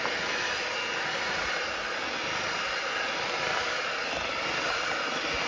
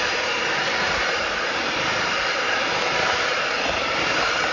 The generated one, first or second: second